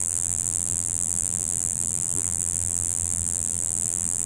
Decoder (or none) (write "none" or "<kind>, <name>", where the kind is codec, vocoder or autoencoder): vocoder, BigVGAN v2